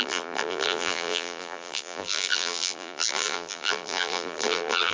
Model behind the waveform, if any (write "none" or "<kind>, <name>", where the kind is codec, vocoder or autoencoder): vocoder, BigVGAN v2